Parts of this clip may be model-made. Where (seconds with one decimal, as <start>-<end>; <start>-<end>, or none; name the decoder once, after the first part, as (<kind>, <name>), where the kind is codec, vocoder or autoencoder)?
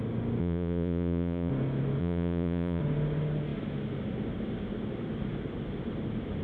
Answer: 0.4-1.5 (vocoder, Vocos); 2.0-2.8